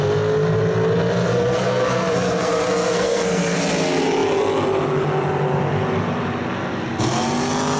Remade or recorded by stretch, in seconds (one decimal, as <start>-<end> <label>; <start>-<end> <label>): 0.0-1.3 recorded; 1.3-3.6 remade; 3.6-7.8 recorded